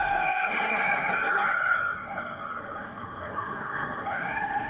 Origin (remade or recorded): remade